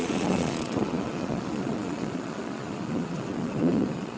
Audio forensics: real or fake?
fake